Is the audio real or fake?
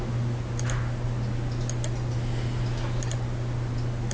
real